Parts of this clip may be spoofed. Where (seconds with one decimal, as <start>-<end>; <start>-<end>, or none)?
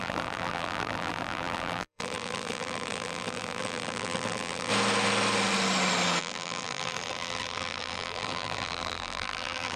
0.0-4.7; 6.2-9.8